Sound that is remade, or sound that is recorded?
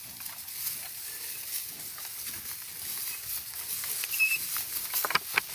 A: recorded